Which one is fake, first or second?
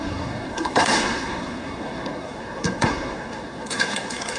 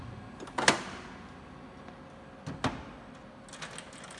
first